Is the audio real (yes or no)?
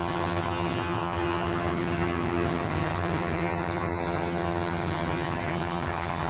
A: no